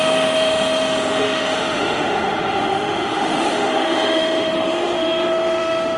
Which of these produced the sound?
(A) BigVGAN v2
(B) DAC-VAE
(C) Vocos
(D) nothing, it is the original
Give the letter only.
B